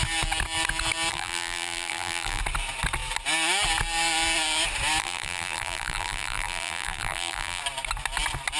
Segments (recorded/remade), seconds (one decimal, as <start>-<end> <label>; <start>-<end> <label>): 0.0-1.1 recorded; 1.1-2.4 remade; 2.4-5.0 recorded; 5.0-7.6 remade; 7.6-8.6 recorded